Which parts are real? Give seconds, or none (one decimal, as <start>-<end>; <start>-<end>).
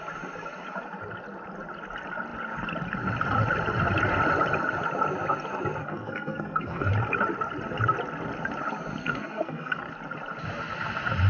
0.0-5.8; 6.9-9.0; 9.8-11.3